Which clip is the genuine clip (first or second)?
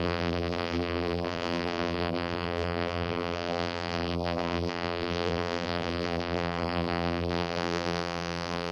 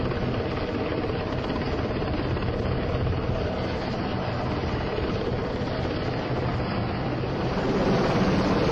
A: second